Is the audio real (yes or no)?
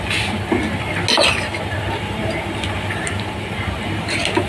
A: yes